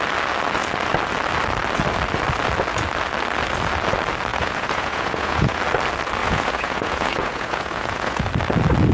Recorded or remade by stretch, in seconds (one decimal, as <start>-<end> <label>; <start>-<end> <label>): 0.0-4.3 recorded; 4.3-5.6 remade; 5.6-6.2 recorded; 6.2-8.2 remade; 8.2-8.9 recorded